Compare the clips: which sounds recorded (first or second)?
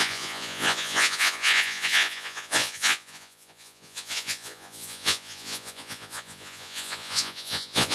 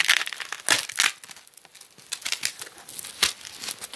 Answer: second